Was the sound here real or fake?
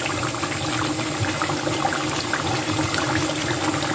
real